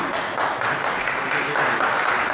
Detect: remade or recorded recorded